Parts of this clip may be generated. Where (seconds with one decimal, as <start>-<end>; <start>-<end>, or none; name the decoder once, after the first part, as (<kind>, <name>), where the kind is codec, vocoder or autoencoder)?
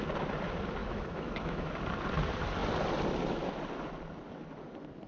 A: 0.8-1.7 (autoencoder, DAC-VAE)